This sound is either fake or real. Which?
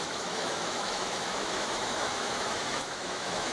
fake